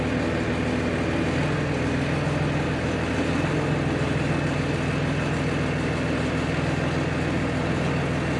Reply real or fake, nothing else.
real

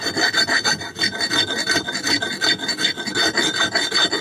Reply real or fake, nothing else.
real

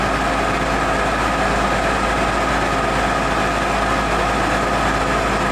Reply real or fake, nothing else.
real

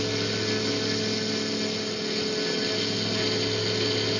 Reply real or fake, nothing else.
real